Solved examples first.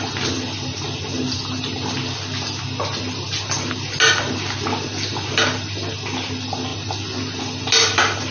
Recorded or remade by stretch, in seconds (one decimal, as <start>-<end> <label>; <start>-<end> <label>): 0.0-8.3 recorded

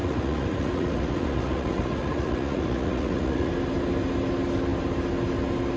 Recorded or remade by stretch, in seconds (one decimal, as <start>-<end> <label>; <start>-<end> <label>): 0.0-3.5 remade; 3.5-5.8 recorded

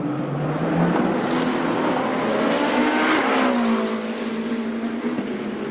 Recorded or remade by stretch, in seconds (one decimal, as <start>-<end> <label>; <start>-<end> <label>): 0.0-5.7 recorded

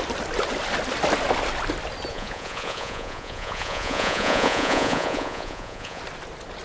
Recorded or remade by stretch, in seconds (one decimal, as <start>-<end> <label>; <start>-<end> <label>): 0.0-2.1 recorded; 2.1-6.0 remade; 6.0-6.6 recorded

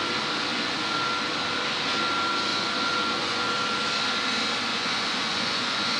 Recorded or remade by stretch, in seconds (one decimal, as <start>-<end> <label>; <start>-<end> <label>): 0.0-0.5 recorded; 0.5-1.0 remade; 1.0-2.5 recorded; 2.5-3.5 remade; 3.5-4.7 recorded; 4.7-6.0 remade